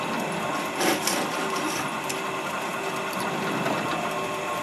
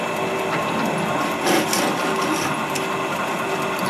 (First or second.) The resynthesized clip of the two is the first